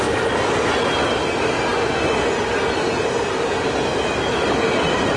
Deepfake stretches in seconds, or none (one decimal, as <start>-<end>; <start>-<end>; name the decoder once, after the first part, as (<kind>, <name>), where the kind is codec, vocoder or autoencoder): none